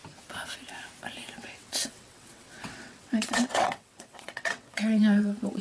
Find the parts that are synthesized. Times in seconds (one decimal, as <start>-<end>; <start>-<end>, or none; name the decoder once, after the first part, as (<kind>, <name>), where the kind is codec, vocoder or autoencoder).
1.4-5.6 (vocoder, WaveNeXt)